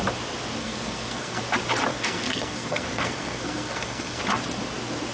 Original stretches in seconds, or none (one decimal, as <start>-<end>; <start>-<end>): 0.0-0.6; 1.4-1.9; 4.2-5.1